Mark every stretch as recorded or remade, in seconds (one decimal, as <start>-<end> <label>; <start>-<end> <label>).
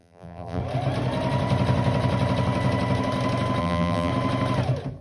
0.0-0.6 remade; 0.6-3.6 recorded; 3.6-4.1 remade; 4.1-5.0 recorded